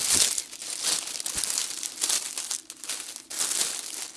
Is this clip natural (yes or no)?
yes